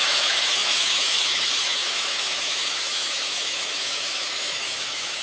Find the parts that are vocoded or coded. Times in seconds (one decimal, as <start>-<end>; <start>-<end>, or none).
0.0-5.2

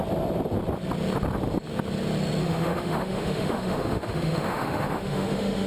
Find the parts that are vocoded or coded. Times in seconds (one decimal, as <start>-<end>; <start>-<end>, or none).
2.4-5.7

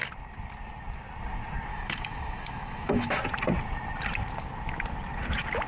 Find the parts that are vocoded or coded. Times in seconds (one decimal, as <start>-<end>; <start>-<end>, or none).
1.7-3.2

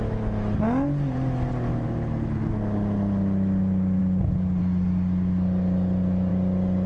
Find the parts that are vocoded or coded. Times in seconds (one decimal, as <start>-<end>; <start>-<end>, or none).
none

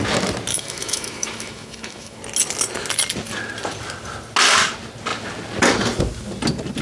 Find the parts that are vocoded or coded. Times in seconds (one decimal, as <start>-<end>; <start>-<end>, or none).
0.5-2.2

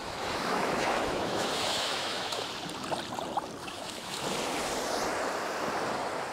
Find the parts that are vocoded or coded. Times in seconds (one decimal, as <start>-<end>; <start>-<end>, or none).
0.0-2.5; 3.6-4.2

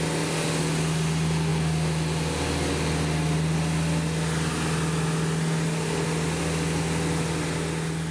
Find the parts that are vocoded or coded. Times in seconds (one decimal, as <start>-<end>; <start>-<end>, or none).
none

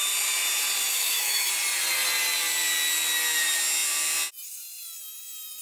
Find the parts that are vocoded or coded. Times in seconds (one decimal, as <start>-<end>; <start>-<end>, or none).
0.9-1.5